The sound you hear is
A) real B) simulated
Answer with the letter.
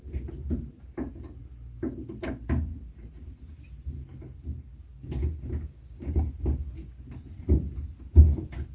A